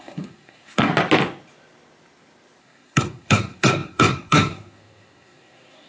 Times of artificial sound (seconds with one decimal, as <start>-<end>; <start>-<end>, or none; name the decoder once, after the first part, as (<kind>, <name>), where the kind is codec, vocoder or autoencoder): 0.0-0.9 (codec, SNAC); 2.6-5.9